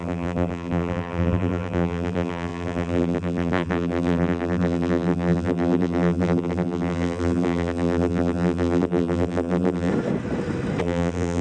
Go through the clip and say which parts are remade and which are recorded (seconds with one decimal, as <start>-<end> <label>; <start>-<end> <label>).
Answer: 0.0-9.9 remade; 9.9-10.8 recorded; 10.8-11.4 remade